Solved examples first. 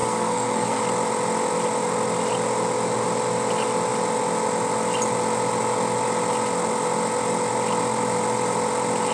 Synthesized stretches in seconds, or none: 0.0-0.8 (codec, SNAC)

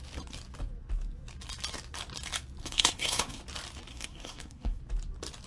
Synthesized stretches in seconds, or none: 2.6-3.4 (codec, SNAC); 3.9-4.8

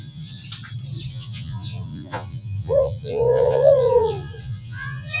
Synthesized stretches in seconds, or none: 0.0-0.4 (vocoder, Vocos); 1.1-5.2

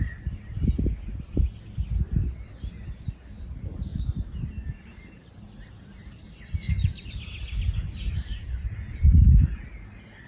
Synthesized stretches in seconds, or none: 3.9-7.1 (vocoder, BigVGAN v2); 8.3-9.0

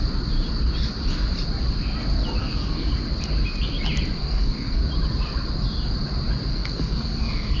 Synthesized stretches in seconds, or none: 2.4-2.9 (codec, SNAC); 4.2-4.8; 6.5-7.6

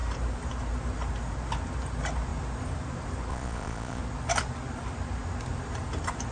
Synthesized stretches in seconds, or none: 3.3-4.0 (vocoder, Vocos)

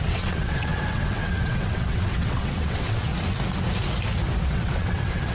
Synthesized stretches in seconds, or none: 0.0-3.1 (vocoder, WaveNeXt); 4.4-5.3

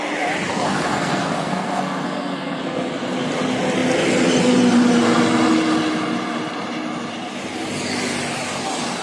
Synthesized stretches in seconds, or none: 0.5-2.9 (codec, SNAC)